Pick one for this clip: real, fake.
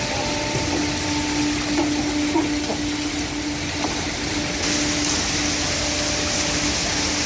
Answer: real